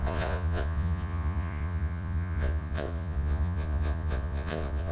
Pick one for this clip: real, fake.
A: fake